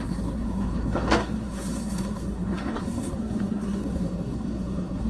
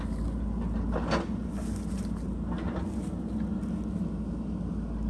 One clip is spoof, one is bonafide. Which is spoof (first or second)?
first